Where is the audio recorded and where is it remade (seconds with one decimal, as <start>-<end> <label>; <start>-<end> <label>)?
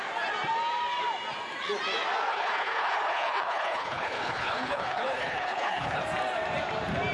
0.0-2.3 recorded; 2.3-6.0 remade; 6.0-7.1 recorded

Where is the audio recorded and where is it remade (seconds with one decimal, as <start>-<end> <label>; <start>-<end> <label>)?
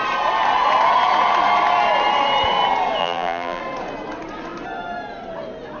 0.0-3.0 recorded; 3.0-3.6 remade; 3.6-5.8 recorded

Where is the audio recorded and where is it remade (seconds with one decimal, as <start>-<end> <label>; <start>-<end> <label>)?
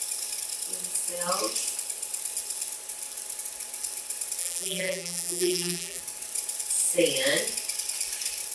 0.0-4.4 recorded; 4.4-6.0 remade; 6.0-8.5 recorded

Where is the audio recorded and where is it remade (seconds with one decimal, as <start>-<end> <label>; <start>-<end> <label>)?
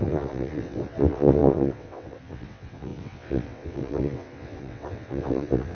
0.0-5.7 remade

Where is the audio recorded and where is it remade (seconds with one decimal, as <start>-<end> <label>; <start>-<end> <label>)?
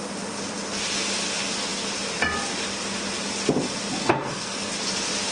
0.0-4.0 recorded; 4.0-4.7 remade; 4.7-5.3 recorded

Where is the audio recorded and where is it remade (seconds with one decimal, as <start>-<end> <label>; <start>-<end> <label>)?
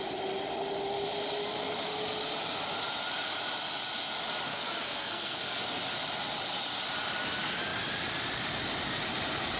0.0-4.5 recorded; 4.5-5.6 remade; 5.6-9.6 recorded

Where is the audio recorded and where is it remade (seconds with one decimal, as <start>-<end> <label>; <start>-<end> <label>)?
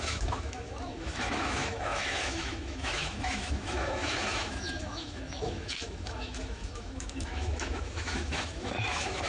0.0-9.3 remade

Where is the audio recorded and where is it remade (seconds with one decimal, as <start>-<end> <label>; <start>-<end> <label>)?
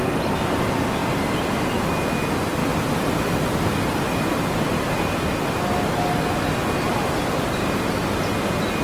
0.0-1.0 recorded; 1.0-1.8 remade; 1.8-2.6 recorded; 2.6-5.1 remade; 5.1-6.9 recorded; 6.9-8.3 remade; 8.3-8.8 recorded